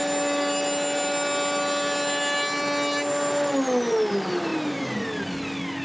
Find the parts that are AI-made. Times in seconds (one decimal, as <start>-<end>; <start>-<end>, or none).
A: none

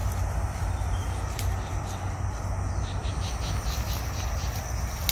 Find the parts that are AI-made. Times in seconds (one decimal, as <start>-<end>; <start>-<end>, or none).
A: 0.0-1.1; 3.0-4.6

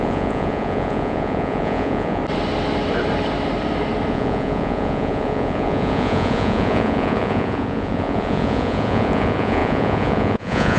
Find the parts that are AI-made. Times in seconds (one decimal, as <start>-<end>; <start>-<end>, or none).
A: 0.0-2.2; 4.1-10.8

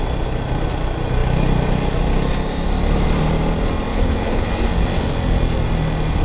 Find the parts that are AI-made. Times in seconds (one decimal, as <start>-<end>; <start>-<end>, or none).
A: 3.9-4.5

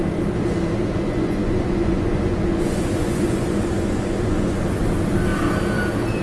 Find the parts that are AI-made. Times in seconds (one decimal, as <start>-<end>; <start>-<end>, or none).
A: 0.9-4.6